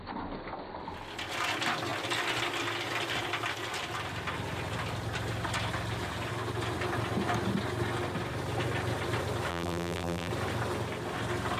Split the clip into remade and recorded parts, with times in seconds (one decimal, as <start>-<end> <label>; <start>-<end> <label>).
0.0-9.5 recorded; 9.5-10.3 remade; 10.3-11.6 recorded

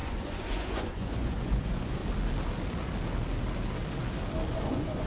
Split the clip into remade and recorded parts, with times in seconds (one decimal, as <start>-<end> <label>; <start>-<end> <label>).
0.0-2.0 remade; 2.0-4.5 recorded; 4.5-5.1 remade

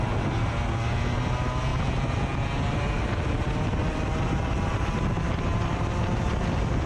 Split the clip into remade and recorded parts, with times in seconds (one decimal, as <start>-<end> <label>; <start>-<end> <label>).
0.0-6.9 recorded

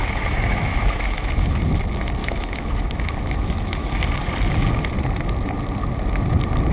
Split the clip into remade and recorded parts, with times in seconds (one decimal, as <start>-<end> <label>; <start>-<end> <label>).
0.0-1.6 remade; 1.6-2.2 recorded; 2.2-3.9 remade; 3.9-6.7 recorded

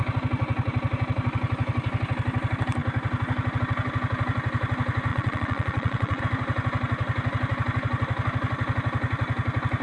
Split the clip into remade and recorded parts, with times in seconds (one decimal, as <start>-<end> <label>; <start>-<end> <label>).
0.0-5.1 recorded; 5.1-6.2 remade; 6.2-9.8 recorded

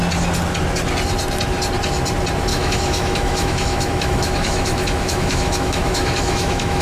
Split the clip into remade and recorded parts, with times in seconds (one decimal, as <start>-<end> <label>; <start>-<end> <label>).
0.0-2.5 recorded; 2.5-6.8 remade